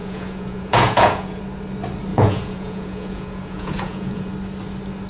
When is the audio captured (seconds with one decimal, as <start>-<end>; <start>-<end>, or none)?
1.4-2.1; 4.3-5.1